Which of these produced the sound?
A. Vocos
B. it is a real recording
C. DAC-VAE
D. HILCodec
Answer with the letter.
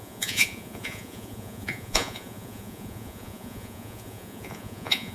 A